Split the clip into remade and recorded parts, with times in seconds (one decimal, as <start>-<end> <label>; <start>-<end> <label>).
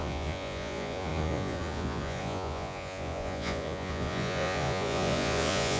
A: 0.0-5.8 remade